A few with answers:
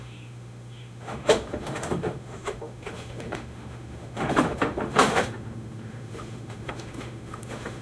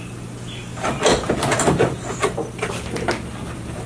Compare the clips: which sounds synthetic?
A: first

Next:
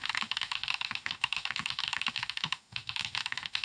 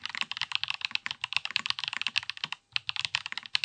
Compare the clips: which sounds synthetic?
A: first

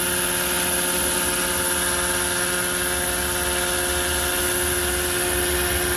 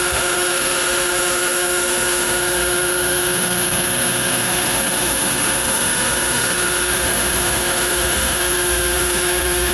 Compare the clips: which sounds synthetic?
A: second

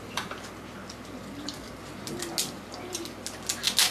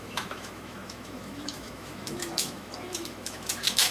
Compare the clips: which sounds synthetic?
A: second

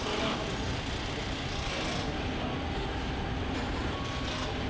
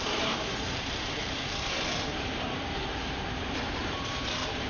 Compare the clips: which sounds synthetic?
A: second